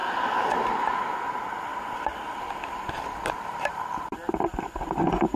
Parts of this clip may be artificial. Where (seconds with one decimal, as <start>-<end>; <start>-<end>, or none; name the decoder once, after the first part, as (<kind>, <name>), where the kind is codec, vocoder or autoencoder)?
1.7-4.5 (vocoder, BigVGAN v2)

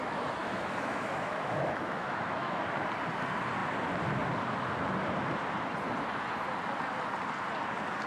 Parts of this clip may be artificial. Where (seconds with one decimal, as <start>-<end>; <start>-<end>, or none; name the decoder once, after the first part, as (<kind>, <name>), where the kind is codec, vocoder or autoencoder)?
0.4-2.6 (autoencoder, DAC-VAE)

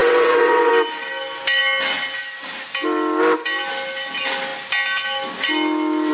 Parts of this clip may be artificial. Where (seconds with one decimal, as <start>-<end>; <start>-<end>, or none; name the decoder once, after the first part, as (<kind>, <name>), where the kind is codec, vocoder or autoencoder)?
0.0-0.7 (vocoder, WaveNeXt)

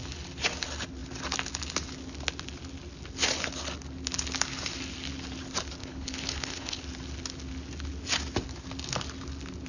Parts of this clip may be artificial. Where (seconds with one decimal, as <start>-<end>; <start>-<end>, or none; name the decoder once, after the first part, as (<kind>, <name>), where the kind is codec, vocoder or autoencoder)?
5.8-6.8 (codec, HILCodec)